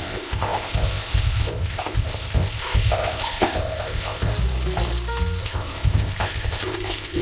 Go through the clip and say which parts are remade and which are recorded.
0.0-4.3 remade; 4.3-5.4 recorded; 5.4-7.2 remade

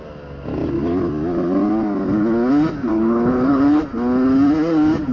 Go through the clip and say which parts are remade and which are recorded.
0.0-2.9 recorded; 2.9-3.8 remade; 3.8-5.1 recorded

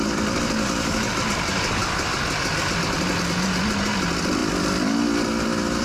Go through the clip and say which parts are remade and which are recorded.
0.0-5.8 recorded

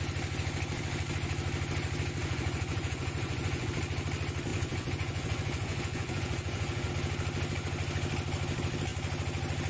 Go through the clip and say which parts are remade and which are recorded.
0.0-2.2 recorded; 2.2-3.7 remade; 3.7-4.5 recorded; 4.5-6.9 remade; 6.9-9.7 recorded